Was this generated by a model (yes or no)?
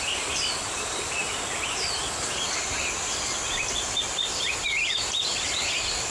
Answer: yes